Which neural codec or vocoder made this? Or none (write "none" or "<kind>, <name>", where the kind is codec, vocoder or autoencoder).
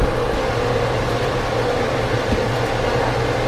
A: none